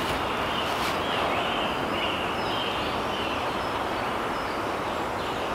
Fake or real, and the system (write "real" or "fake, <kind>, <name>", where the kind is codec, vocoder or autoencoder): real